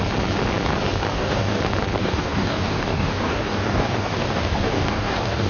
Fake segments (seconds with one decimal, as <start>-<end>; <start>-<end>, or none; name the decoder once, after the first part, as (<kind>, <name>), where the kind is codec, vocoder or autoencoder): 1.1-1.6 (codec, DAC); 2.0-5.5